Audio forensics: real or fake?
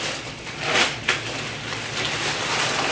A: real